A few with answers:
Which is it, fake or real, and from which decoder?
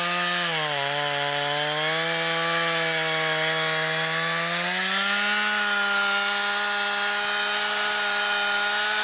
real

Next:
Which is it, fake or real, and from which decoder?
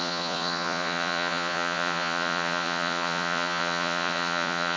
fake, vocoder, Vocos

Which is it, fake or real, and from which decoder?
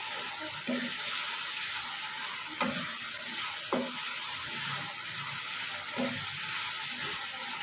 real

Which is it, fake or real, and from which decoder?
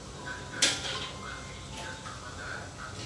real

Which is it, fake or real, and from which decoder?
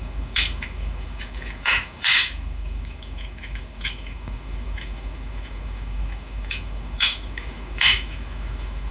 fake, autoencoder, DAC-VAE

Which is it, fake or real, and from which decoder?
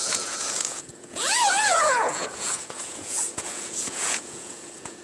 fake, vocoder, Vocos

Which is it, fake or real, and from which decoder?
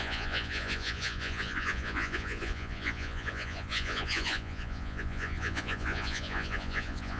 fake, vocoder, Vocos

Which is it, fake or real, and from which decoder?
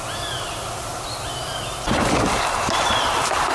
real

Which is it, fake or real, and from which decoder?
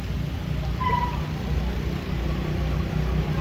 real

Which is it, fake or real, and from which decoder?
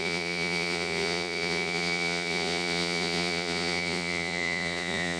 fake, vocoder, Vocos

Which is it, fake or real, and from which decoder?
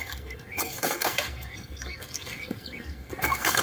fake, codec, SNAC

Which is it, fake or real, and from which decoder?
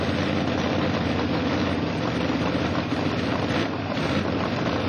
real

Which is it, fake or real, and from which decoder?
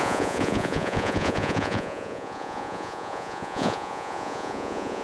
fake, vocoder, Vocos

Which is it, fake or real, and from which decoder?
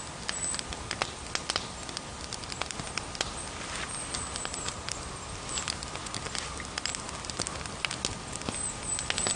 real